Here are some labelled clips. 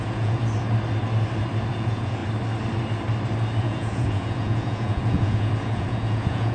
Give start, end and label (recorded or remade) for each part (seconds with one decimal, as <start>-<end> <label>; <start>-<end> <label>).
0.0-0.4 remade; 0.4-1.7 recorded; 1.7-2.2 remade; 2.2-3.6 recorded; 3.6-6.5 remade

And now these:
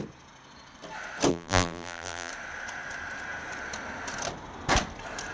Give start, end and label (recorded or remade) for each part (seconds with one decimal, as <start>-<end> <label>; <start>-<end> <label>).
0.0-1.3 recorded; 1.3-2.3 remade; 2.3-5.3 recorded

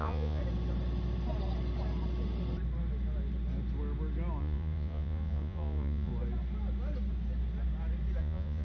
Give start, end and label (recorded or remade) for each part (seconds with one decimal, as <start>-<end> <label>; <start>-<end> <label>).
0.0-0.4 remade; 0.4-4.4 recorded; 4.4-6.1 remade; 6.1-8.2 recorded; 8.2-8.6 remade

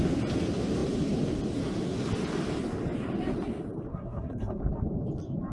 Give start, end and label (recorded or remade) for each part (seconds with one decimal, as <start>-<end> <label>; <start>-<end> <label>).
0.0-3.9 recorded; 3.9-4.6 remade; 4.6-5.5 recorded

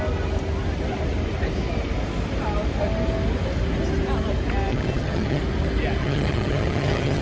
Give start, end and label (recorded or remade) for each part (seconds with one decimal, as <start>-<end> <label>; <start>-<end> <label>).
0.0-4.7 recorded; 4.7-5.4 remade; 5.4-6.0 recorded; 6.0-7.2 remade